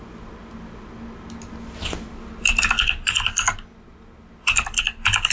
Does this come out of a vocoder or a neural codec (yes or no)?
no